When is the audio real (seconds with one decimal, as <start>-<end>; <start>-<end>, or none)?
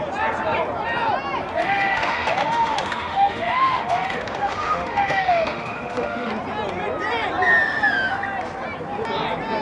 0.0-1.6; 6.3-9.6